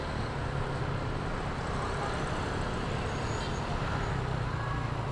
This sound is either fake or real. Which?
real